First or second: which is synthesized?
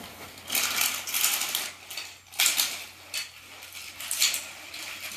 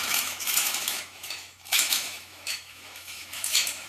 second